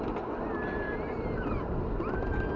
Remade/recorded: recorded